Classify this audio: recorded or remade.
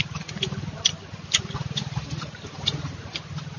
recorded